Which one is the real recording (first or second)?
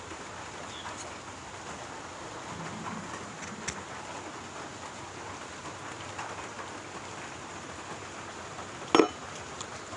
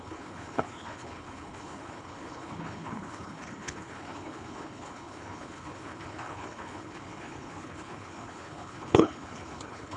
first